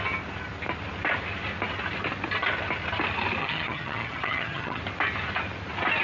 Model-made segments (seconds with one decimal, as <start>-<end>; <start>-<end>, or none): 3.4-4.8